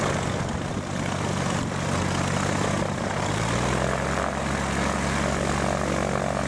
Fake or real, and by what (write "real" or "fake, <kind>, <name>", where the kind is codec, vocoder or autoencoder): real